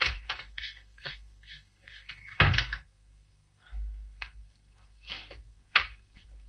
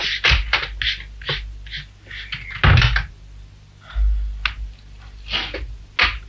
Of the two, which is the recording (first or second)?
second